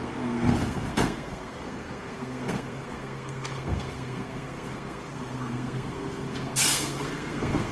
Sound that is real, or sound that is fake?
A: fake